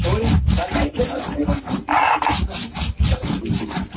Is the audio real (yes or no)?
yes